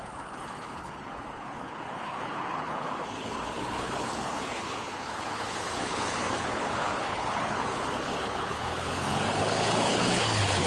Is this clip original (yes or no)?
no